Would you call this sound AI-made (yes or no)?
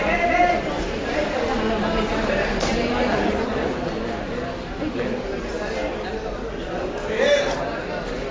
no